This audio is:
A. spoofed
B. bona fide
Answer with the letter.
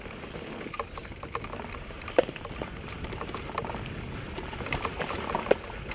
B